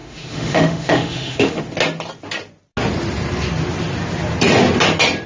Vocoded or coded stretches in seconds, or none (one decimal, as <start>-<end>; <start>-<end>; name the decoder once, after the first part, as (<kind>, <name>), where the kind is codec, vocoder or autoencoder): 0.0-1.6 (autoencoder, DAC-VAE)